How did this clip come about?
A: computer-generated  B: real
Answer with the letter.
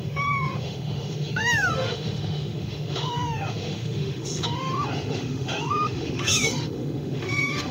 A